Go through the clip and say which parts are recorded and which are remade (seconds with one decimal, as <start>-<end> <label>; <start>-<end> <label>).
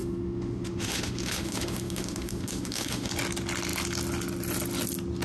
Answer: 0.0-3.1 remade; 3.1-5.2 recorded